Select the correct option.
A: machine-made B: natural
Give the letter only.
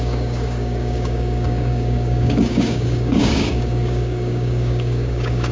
A